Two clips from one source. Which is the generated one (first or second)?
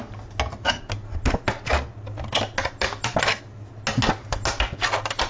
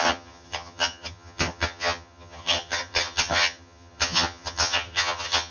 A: second